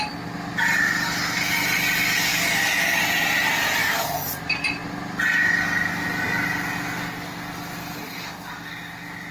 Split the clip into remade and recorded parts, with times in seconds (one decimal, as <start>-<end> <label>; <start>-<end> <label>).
0.0-2.3 recorded; 2.3-3.0 remade; 3.0-3.8 recorded; 3.8-4.3 remade; 4.3-9.3 recorded